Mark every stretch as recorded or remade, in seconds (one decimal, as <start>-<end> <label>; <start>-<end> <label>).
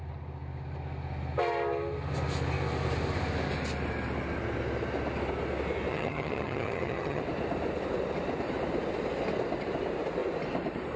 0.0-5.9 recorded; 5.9-7.2 remade; 7.2-11.0 recorded